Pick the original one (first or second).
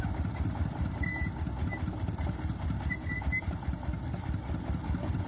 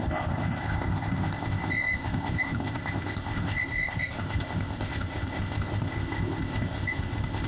first